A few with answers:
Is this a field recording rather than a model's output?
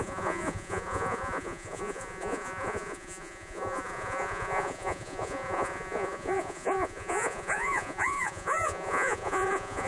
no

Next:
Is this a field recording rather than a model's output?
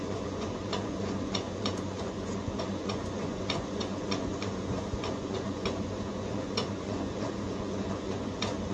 no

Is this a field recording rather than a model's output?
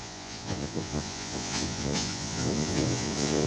no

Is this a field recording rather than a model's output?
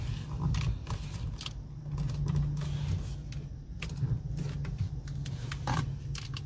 yes